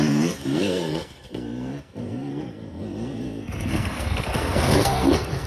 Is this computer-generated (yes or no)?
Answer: yes